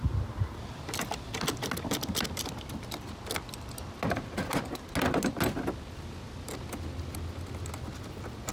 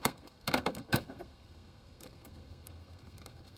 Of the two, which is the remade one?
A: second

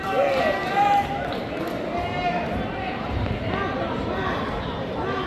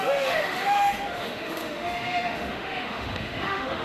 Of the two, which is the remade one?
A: second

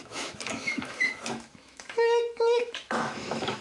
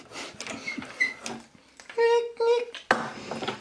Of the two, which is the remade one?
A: first